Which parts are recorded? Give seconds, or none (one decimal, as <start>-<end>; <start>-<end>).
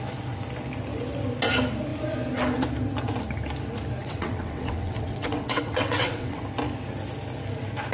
0.0-4.0; 6.4-7.9